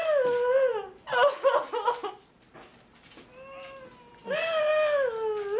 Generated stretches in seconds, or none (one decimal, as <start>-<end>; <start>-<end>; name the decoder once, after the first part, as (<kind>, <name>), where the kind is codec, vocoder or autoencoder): none